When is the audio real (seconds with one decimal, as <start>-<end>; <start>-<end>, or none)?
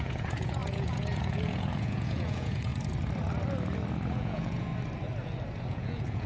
2.7-4.1; 4.7-5.7